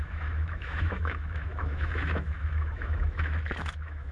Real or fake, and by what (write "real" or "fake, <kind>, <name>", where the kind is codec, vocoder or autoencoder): fake, autoencoder, DAC-VAE